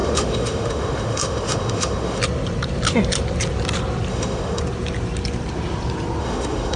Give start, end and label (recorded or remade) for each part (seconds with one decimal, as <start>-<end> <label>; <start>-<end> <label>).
0.0-2.2 remade; 2.2-4.1 recorded; 4.1-4.6 remade; 4.6-6.2 recorded; 6.2-6.8 remade